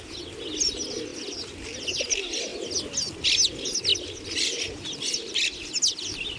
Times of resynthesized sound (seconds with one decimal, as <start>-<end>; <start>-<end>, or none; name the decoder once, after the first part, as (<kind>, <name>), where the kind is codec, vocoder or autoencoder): none